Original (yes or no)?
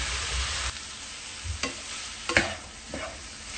yes